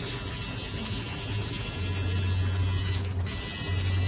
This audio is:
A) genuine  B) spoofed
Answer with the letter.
A